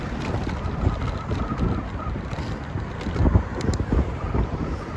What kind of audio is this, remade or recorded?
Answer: recorded